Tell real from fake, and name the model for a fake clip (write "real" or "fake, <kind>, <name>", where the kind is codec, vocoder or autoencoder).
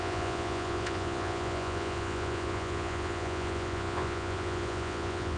fake, vocoder, Vocos